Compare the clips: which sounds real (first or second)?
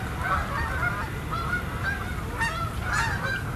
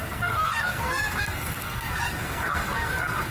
first